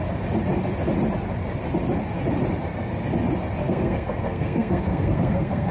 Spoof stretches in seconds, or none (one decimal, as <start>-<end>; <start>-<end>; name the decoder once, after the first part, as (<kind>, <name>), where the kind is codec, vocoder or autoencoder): 3.6-5.7 (codec, SNAC)